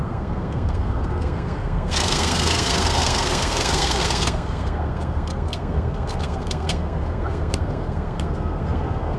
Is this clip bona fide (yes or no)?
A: no